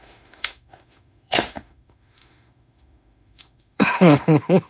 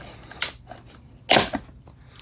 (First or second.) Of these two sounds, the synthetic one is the first